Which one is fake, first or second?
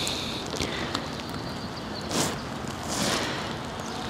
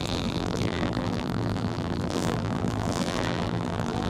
second